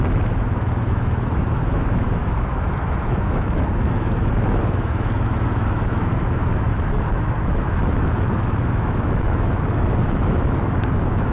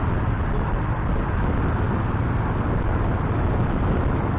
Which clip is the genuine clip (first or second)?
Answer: second